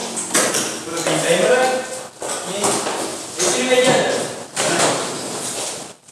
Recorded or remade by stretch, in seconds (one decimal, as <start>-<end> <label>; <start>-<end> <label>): 0.0-0.9 recorded; 0.9-1.5 remade; 1.5-3.1 recorded; 3.1-4.8 remade; 4.8-6.1 recorded